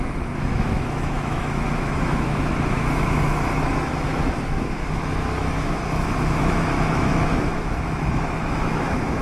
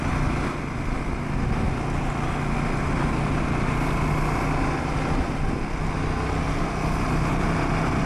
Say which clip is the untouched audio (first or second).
second